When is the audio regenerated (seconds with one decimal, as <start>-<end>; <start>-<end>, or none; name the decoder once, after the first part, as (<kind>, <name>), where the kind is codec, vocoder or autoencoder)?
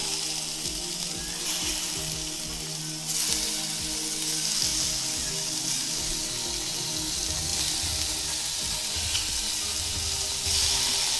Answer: none